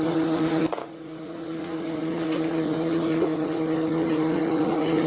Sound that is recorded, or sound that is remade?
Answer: remade